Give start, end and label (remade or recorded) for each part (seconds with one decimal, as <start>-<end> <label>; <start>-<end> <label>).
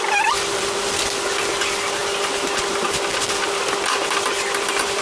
0.0-5.0 recorded